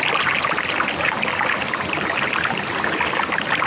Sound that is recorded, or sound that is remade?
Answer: recorded